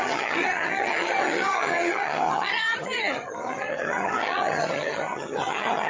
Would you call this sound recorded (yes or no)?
no